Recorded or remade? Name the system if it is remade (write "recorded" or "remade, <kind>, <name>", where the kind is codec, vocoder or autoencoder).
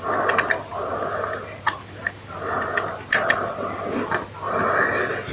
recorded